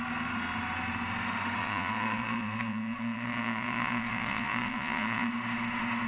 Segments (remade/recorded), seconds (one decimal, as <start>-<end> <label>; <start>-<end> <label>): 0.0-1.6 recorded; 1.6-5.3 remade; 5.3-6.1 recorded